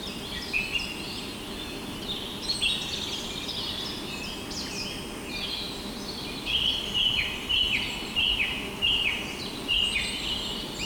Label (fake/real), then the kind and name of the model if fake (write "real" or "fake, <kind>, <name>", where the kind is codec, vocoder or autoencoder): real